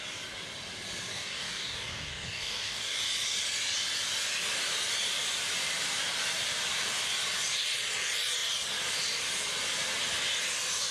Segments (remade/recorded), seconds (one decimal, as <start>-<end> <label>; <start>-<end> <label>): 0.0-1.1 recorded; 1.1-3.0 remade; 3.0-10.9 recorded